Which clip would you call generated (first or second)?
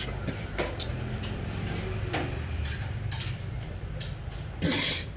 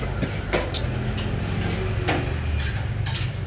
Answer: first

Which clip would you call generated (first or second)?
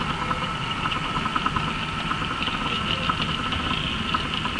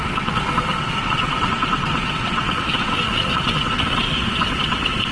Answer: second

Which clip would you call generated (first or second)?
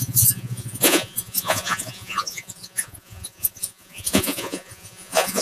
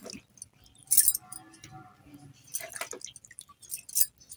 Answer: first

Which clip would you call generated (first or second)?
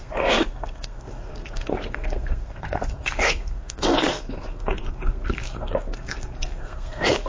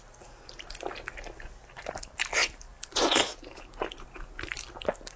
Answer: first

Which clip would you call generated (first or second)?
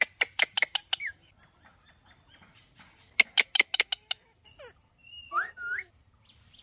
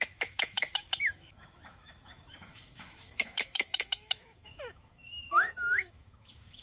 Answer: second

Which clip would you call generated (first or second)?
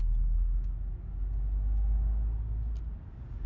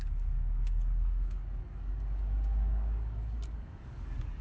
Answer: second